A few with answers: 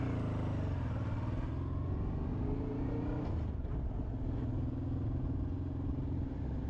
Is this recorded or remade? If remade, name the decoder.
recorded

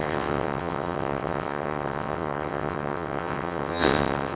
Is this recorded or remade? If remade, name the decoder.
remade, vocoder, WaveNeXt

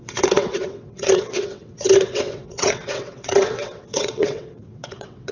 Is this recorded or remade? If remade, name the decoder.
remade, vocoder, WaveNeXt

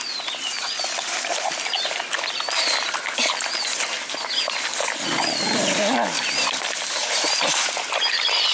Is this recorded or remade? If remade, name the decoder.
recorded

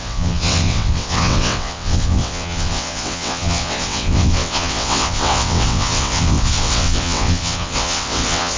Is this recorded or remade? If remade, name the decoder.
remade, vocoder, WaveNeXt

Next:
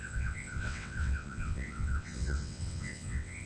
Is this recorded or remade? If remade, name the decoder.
remade, vocoder, WaveNeXt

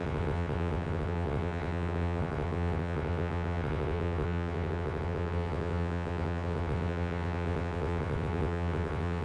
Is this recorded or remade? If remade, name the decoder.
remade, vocoder, WaveNeXt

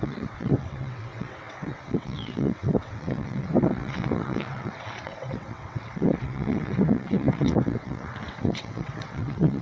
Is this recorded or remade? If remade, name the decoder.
remade, vocoder, WaveNeXt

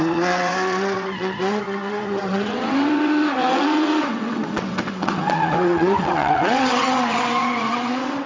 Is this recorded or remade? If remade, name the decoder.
remade, vocoder, WaveNeXt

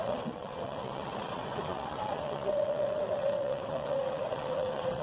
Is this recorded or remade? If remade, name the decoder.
remade, vocoder, WaveNeXt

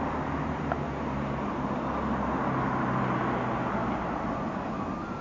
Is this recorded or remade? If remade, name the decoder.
recorded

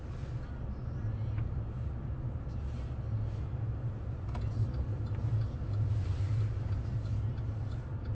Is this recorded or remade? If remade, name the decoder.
recorded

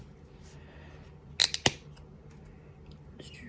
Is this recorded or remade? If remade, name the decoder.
recorded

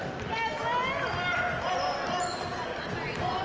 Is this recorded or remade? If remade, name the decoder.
recorded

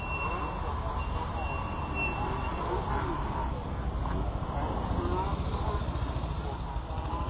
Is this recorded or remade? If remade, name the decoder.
recorded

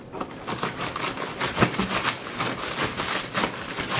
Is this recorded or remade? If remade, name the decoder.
recorded